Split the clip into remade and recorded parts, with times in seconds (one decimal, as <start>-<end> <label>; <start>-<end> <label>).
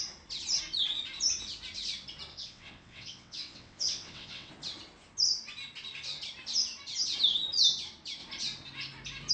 0.0-2.3 recorded; 2.3-4.5 remade; 4.5-9.3 recorded